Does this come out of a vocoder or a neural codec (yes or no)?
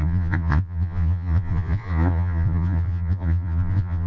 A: yes